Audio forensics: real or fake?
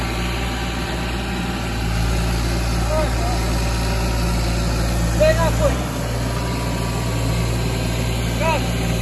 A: real